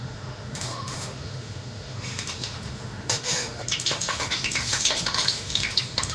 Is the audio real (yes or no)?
no